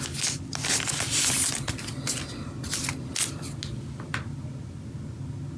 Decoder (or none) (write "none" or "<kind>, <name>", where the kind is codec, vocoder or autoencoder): none